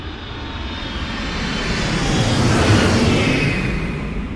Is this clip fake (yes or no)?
no